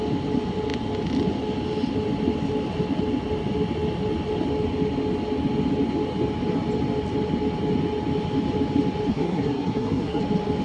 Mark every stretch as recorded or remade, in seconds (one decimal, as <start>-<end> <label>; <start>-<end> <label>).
0.0-9.1 recorded; 9.1-10.2 remade; 10.2-10.6 recorded